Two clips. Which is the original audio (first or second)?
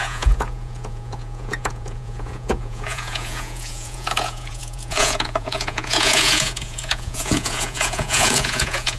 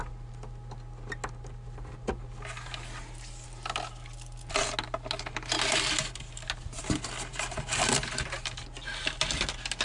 second